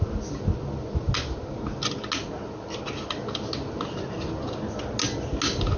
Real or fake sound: real